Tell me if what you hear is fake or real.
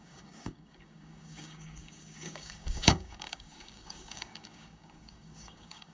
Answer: fake